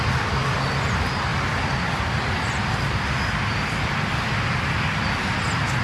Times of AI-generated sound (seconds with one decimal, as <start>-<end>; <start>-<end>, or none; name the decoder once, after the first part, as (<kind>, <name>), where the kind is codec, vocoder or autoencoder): none